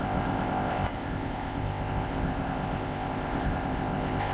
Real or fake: fake